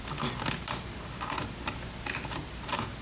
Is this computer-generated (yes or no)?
no